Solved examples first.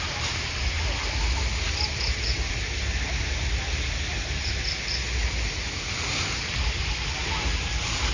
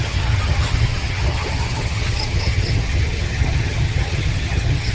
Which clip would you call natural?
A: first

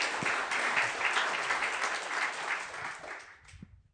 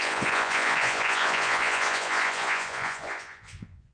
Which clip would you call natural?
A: first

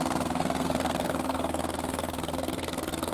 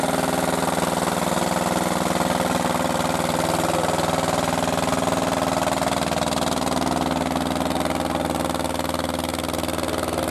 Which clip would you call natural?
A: second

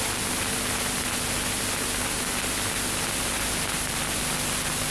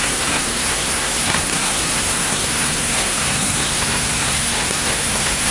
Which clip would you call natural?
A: first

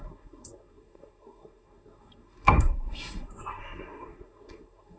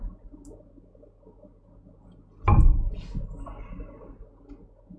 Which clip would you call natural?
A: second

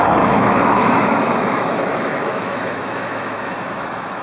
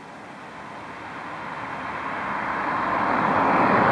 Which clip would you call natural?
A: second